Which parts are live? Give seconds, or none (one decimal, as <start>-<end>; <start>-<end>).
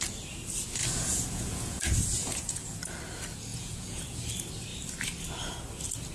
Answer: 0.0-0.8; 1.8-2.2; 2.8-3.5; 4.2-6.1